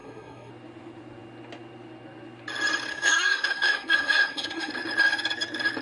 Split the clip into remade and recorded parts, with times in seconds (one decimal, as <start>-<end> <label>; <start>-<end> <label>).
0.0-0.5 remade; 0.5-2.9 recorded; 2.9-4.7 remade; 4.7-5.8 recorded

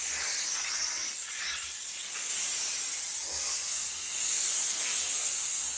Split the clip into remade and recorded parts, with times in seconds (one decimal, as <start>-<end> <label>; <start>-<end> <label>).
0.0-3.3 recorded; 3.3-5.8 remade

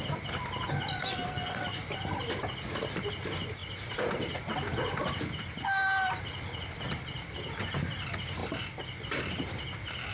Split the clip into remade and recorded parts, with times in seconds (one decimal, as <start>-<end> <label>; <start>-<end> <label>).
0.0-1.0 recorded; 1.0-1.6 remade; 1.6-10.1 recorded